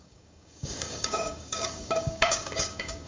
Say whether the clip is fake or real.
fake